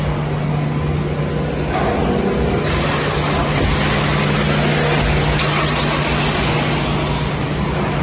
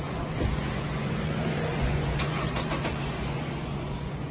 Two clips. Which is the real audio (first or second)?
first